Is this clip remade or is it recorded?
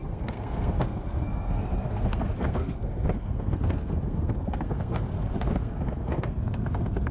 remade